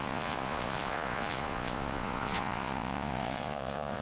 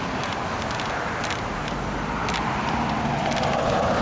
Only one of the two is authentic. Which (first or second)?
second